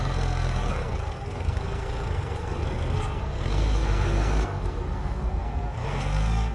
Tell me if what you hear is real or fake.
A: fake